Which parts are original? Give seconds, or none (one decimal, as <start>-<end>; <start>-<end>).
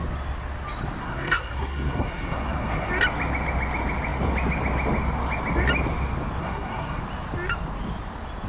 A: 0.0-1.0; 2.9-6.4; 7.0-8.5